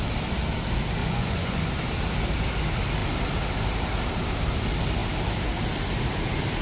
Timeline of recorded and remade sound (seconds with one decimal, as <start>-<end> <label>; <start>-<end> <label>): 0.0-1.0 recorded; 1.0-1.7 remade; 1.7-6.6 recorded